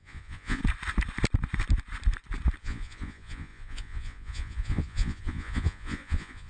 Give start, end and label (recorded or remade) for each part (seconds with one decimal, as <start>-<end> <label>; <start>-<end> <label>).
0.0-0.6 remade; 0.6-2.6 recorded; 2.6-6.5 remade